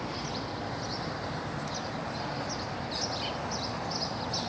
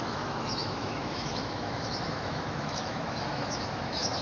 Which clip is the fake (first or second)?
second